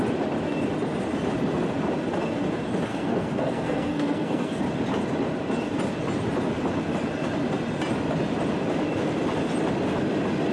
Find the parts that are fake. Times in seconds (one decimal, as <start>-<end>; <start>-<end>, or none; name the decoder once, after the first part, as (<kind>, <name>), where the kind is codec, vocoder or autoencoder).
2.9-4.6 (codec, SNAC)